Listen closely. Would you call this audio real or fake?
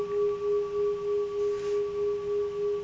real